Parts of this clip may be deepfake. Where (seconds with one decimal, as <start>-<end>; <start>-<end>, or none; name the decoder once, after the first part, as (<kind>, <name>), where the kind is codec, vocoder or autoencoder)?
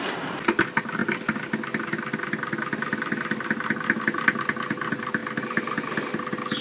none